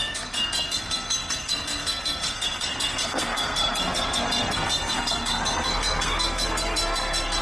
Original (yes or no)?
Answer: no